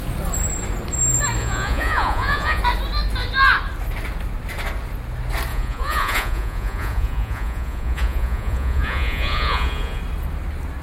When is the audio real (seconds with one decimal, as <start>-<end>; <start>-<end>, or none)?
0.0-1.4; 2.6-5.5; 10.0-10.8